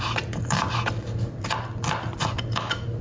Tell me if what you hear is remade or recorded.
recorded